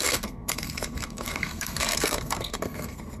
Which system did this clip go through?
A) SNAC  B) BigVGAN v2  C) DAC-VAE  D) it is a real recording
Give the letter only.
A